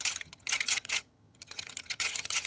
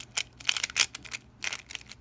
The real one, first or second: second